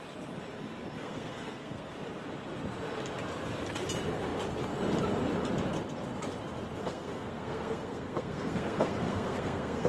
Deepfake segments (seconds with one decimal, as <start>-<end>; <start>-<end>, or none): 1.0-1.9; 6.8-9.9